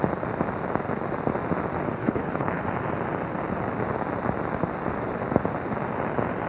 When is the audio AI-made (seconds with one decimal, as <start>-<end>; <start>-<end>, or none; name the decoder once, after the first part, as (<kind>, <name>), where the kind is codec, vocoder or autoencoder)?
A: 2.0-2.6 (codec, HILCodec)